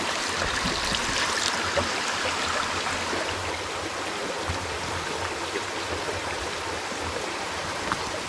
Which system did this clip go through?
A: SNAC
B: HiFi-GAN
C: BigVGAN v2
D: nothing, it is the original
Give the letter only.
D